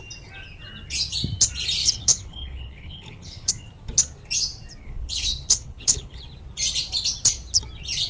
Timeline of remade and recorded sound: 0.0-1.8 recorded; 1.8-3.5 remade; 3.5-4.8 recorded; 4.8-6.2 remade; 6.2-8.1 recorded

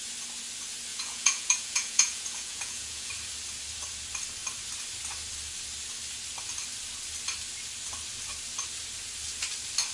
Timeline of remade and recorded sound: 0.0-0.9 recorded; 0.9-3.1 remade; 3.1-9.9 recorded

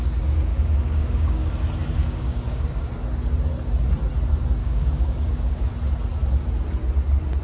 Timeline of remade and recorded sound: 0.0-0.5 recorded; 0.5-1.5 remade; 1.5-2.0 recorded; 2.0-2.8 remade; 2.8-4.6 recorded; 4.6-5.7 remade; 5.7-7.4 recorded

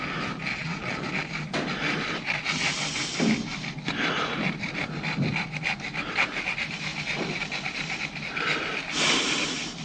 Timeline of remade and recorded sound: 0.0-0.5 recorded; 0.5-1.1 remade; 1.1-9.8 recorded

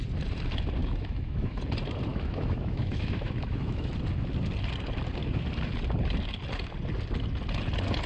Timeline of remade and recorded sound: 0.0-0.8 recorded; 0.8-1.6 remade; 1.6-2.1 recorded; 2.1-3.9 remade; 3.9-8.1 recorded